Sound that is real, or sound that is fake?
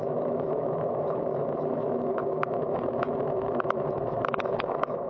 fake